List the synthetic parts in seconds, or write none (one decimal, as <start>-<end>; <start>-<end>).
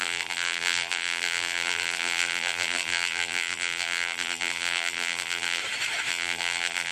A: 0.0-5.6; 6.1-6.9